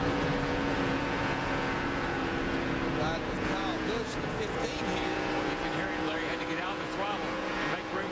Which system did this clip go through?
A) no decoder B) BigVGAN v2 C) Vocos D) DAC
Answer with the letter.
C